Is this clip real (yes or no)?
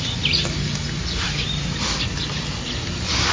yes